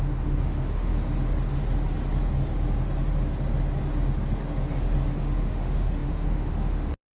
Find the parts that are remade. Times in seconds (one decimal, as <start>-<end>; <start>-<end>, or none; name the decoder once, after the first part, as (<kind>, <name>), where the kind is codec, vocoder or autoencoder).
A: 0.0-0.9 (autoencoder, DAC-VAE); 5.2-7.1